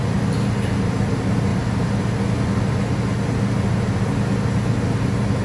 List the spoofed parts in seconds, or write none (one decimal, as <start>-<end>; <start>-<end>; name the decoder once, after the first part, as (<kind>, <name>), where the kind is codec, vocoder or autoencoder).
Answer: none